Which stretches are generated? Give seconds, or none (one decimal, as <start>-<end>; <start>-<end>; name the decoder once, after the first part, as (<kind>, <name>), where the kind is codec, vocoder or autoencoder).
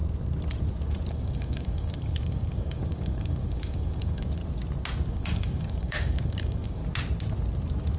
1.1-4.4 (codec, DAC); 5.1-6.8